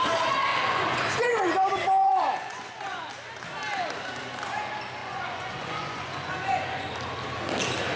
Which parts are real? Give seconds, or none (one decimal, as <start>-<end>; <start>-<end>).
0.0-0.5; 1.4-2.0; 3.1-5.0; 6.9-8.0